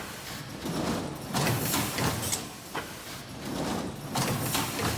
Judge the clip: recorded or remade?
remade